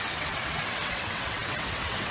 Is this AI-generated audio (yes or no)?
yes